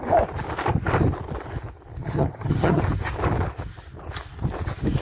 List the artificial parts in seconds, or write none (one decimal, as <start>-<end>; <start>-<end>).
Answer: 2.0-2.8